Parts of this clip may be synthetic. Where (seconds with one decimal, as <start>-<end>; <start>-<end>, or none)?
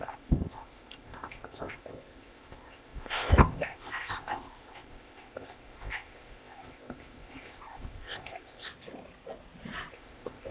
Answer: 0.0-8.7; 9.9-10.5